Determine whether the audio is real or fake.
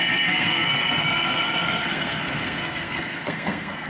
fake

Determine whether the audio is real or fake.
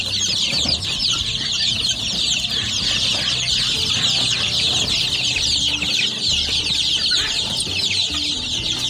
fake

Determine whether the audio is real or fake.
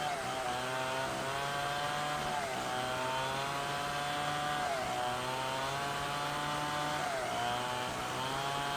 real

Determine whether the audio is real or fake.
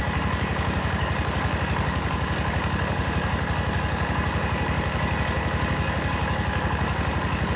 fake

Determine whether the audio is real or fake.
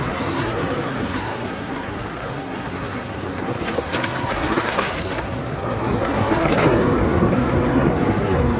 fake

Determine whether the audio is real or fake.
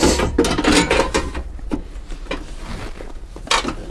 real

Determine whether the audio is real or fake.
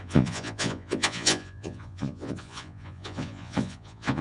fake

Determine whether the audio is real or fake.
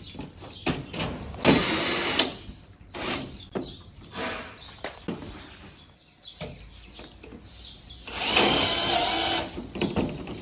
real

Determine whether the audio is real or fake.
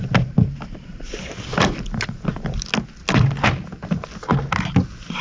real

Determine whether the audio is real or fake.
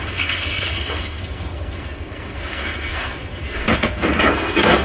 fake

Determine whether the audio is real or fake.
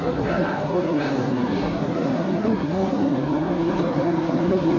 fake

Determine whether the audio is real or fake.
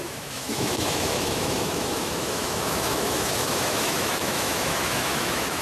fake